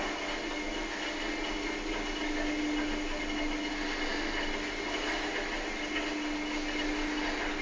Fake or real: real